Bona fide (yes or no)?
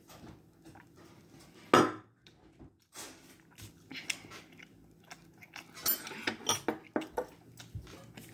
yes